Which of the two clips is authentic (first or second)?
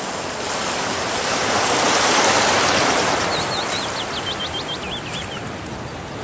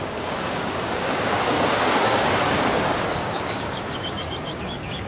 first